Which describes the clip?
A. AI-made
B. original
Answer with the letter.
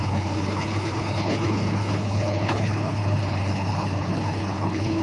A